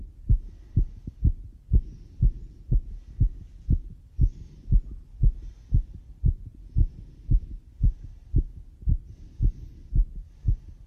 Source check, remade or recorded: recorded